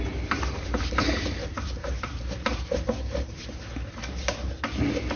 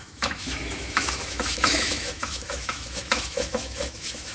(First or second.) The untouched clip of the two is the first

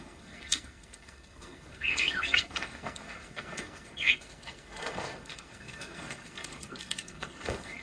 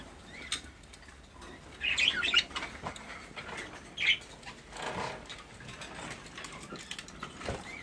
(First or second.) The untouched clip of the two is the second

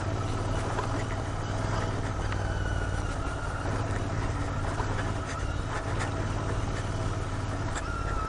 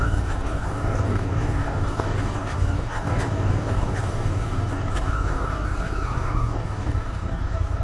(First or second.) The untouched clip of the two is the first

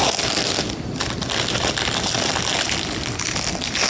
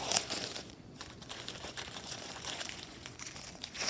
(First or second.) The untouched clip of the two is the first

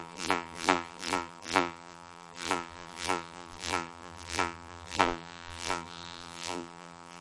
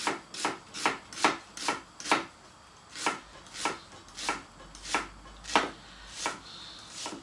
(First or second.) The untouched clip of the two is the second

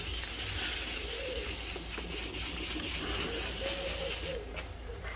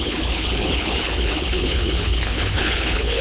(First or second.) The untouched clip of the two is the first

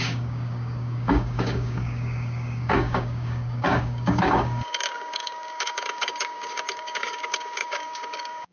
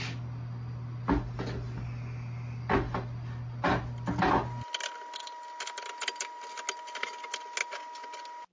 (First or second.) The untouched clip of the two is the second